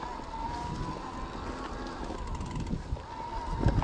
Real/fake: real